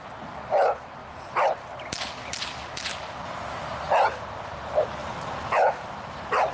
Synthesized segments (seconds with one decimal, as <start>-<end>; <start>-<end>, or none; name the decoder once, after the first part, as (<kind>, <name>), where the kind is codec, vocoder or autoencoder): none